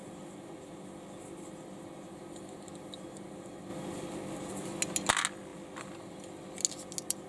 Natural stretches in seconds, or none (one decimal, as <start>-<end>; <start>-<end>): 0.0-7.3